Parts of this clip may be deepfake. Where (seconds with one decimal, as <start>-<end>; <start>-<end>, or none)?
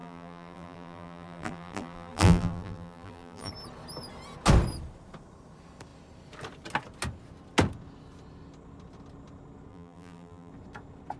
0.0-3.5; 9.7-10.5